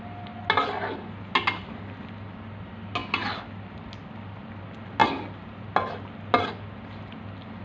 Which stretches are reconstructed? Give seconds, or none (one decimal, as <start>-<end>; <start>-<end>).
none